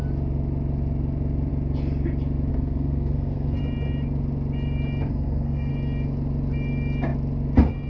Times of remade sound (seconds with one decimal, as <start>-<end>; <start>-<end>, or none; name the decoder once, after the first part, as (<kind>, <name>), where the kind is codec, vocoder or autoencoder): 2.5-3.6 (codec, SNAC); 5.1-5.7